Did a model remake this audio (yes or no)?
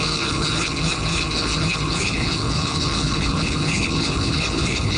yes